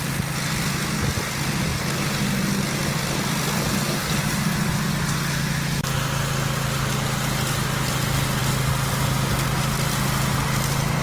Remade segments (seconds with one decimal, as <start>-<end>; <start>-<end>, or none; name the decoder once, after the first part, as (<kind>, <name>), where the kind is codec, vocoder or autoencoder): none